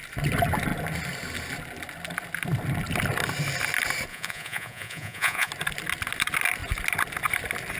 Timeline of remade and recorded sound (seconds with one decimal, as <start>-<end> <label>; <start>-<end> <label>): 0.0-4.1 recorded; 4.1-5.5 remade; 5.5-7.8 recorded